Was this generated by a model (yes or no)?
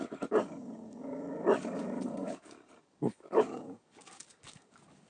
yes